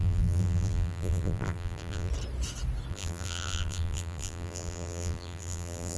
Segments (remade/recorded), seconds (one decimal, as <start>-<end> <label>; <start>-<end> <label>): 0.0-2.1 remade; 2.1-2.9 recorded; 2.9-6.0 remade